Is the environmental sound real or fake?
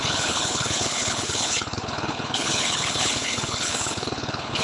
fake